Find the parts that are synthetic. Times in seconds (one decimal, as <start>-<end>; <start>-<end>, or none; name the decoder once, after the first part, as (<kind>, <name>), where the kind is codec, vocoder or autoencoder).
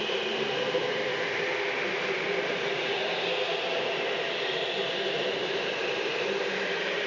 0.0-1.1 (vocoder, BigVGAN v2); 5.4-7.1